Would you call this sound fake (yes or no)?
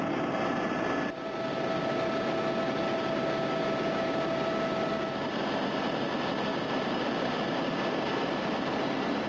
no